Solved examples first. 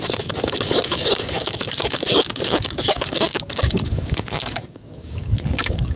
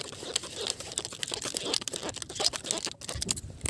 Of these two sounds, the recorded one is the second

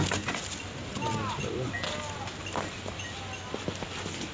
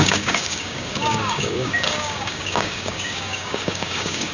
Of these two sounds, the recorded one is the first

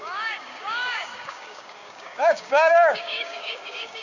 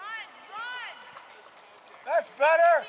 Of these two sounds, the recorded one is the second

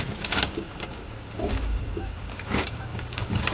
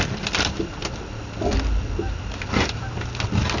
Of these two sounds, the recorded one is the second